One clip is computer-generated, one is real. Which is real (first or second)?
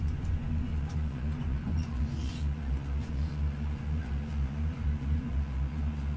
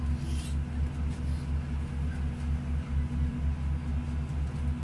second